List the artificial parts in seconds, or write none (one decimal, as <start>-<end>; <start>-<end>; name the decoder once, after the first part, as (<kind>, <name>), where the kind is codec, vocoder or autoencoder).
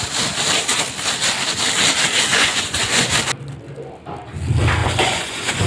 2.3-3.1 (vocoder, Vocos); 4.8-5.7